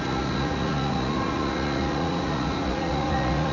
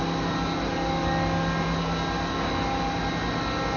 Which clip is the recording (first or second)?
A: second